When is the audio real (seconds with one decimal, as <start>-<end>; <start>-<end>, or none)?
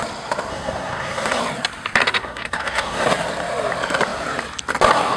0.0-0.5; 1.4-2.2; 3.1-5.2